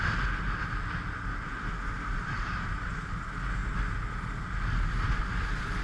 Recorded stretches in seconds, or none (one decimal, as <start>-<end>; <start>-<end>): 0.0-5.8